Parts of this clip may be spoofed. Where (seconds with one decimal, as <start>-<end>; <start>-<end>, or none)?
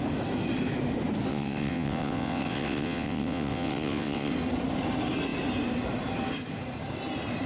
1.3-4.3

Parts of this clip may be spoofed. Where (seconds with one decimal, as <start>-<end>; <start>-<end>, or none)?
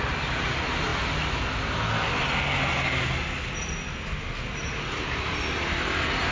none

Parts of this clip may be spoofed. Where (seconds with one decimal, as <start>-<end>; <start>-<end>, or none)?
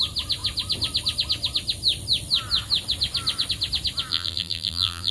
4.1-5.1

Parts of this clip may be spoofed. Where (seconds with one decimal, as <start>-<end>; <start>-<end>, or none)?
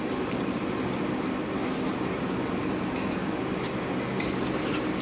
0.0-0.6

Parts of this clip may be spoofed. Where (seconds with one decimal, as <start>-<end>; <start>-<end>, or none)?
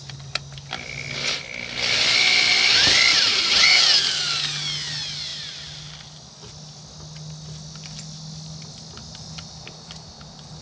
3.1-3.8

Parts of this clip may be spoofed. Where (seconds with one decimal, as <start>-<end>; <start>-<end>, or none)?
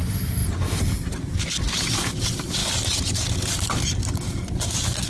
0.0-0.4; 1.9-5.1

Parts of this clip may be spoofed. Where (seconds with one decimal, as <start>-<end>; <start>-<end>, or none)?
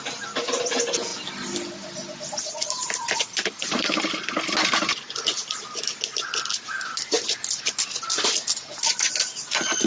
none